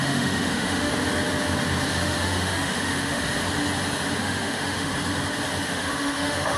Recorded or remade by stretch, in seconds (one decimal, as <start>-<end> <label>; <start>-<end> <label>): 0.0-0.9 remade; 0.9-1.9 recorded; 1.9-3.2 remade; 3.2-4.2 recorded; 4.2-4.9 remade; 4.9-5.6 recorded; 5.6-6.6 remade